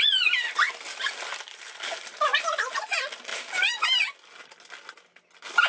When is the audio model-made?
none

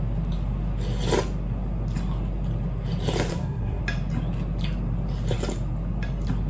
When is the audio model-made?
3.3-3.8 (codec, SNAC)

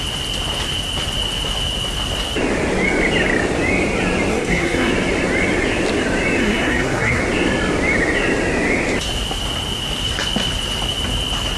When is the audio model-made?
4.3-4.9 (codec, SNAC); 6.4-7.2